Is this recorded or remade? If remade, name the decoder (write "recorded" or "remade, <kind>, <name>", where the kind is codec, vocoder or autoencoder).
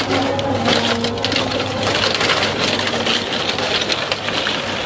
recorded